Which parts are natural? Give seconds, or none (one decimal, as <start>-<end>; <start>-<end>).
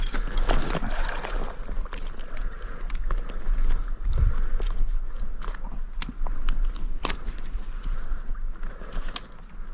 0.0-7.0; 8.2-9.7